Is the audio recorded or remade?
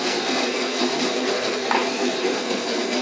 remade